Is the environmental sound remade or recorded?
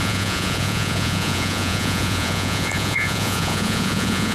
remade